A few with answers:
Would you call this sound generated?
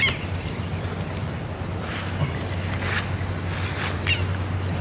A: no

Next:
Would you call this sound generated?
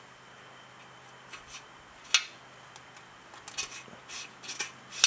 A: no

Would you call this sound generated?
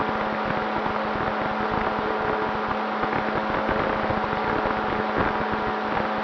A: no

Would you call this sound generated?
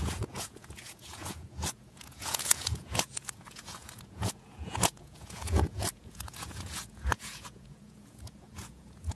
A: yes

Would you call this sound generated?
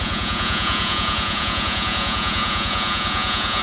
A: yes